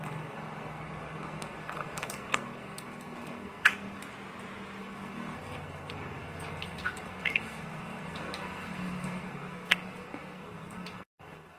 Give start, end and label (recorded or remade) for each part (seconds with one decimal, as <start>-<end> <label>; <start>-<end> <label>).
0.0-4.0 remade; 4.0-4.8 recorded; 4.8-11.6 remade

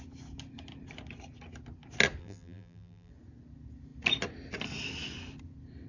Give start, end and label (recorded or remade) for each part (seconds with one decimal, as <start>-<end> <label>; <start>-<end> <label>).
0.0-2.2 recorded; 2.2-3.1 remade; 3.1-5.9 recorded

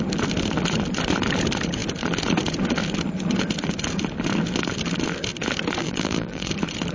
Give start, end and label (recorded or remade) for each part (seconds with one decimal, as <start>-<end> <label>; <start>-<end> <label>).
0.0-5.8 recorded; 5.8-6.5 remade; 6.5-6.9 recorded

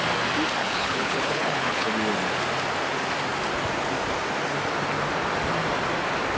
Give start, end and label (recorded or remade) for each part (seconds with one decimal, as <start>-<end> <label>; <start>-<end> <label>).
0.0-0.6 recorded; 0.6-1.9 remade; 1.9-6.4 recorded

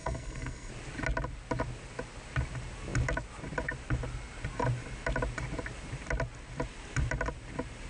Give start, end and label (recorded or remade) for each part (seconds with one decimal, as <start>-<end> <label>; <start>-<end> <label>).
0.0-0.7 remade; 0.7-7.9 recorded

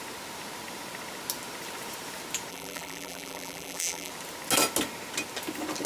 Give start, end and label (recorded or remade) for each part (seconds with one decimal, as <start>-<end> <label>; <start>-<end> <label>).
0.0-2.5 recorded; 2.5-4.1 remade; 4.1-5.9 recorded

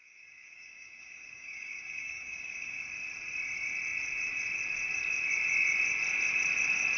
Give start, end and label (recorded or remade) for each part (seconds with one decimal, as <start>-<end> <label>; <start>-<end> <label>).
0.0-2.8 remade; 2.8-7.0 recorded